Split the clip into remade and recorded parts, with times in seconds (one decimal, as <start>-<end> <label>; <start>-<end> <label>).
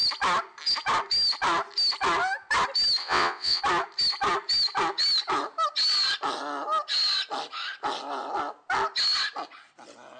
0.0-3.0 recorded; 3.0-3.6 remade; 3.6-10.2 recorded